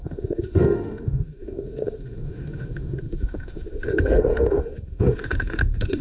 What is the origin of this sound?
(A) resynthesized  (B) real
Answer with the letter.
A